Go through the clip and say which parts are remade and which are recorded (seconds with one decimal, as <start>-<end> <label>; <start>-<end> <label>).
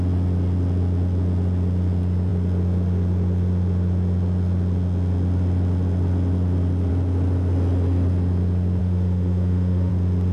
0.0-8.8 recorded; 8.8-9.9 remade; 9.9-10.3 recorded